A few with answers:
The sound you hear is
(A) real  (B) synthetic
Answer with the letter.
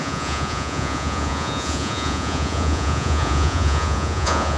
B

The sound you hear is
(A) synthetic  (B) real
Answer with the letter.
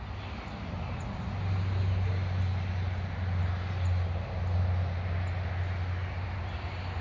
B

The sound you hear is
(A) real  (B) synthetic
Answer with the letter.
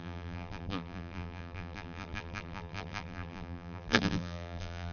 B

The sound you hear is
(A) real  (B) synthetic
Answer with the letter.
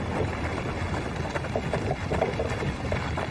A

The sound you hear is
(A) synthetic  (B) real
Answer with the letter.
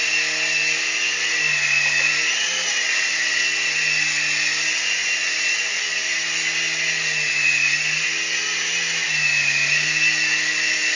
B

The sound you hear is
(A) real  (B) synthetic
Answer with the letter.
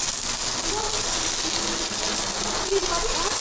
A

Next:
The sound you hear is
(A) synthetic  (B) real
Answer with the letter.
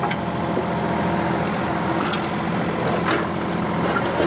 B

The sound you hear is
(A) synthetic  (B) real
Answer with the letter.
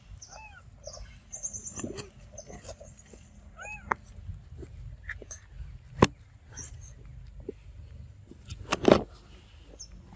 B